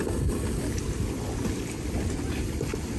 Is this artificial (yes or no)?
no